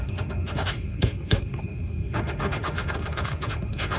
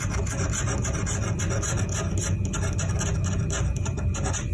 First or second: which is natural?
second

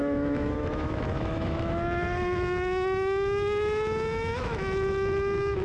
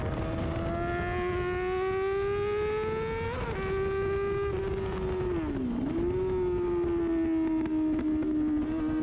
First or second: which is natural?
second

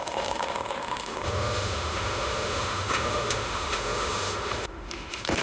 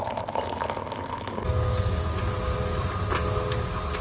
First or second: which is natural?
second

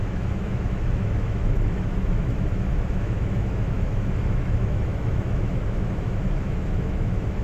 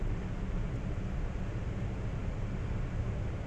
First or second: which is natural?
second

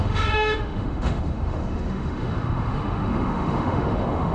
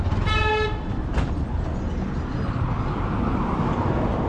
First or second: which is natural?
second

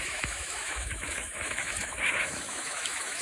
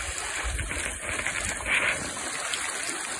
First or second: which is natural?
second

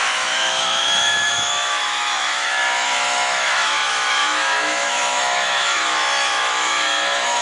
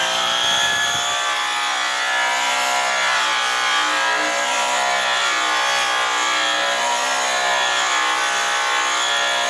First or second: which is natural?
second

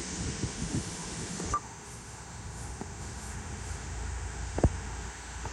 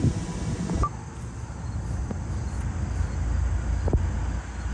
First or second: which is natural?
second